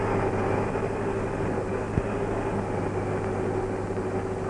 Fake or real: real